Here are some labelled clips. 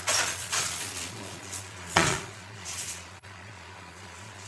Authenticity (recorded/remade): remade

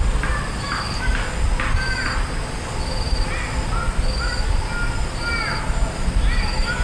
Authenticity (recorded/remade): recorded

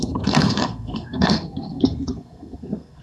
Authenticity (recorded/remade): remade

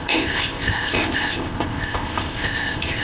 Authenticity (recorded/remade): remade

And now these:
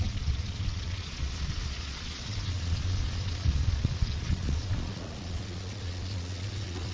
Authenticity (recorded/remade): remade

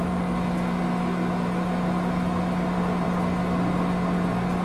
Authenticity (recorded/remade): recorded